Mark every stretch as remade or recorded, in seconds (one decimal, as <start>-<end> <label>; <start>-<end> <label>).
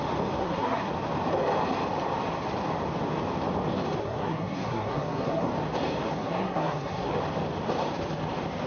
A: 0.0-0.4 recorded; 0.4-0.9 remade; 0.9-4.0 recorded; 4.0-5.5 remade; 5.5-6.1 recorded; 6.1-7.1 remade; 7.1-8.7 recorded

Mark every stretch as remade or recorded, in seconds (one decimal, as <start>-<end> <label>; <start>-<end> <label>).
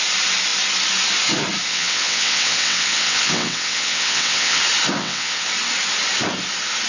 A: 0.0-1.7 recorded; 1.7-4.6 remade; 4.6-5.0 recorded; 5.0-5.5 remade; 5.5-6.9 recorded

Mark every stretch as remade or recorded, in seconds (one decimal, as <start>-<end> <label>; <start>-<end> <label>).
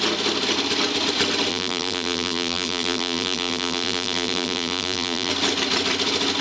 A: 0.0-1.5 recorded; 1.5-5.3 remade; 5.3-6.4 recorded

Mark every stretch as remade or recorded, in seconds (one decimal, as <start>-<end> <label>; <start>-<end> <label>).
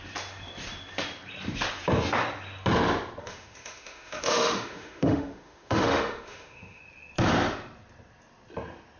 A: 0.0-3.2 recorded; 3.2-6.8 remade; 6.8-9.0 recorded